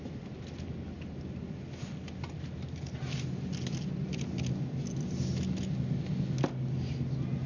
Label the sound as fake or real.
real